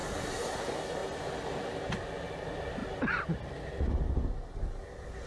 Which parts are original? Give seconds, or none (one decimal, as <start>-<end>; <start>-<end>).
0.0-5.3